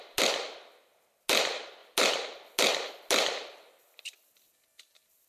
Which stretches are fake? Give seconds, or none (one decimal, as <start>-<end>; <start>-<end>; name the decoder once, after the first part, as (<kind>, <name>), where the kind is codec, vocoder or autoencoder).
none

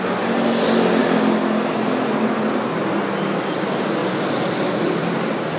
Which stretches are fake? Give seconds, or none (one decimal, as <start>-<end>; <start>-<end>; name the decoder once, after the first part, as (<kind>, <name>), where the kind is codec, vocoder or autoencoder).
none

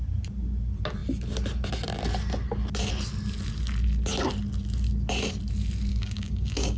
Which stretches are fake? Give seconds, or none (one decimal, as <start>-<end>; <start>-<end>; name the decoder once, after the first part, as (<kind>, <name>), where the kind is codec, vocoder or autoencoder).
5.9-6.8 (codec, DAC)

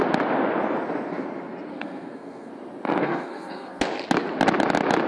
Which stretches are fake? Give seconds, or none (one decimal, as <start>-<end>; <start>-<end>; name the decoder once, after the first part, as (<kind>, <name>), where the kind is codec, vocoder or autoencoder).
1.7-2.5 (codec, SNAC); 3.0-3.8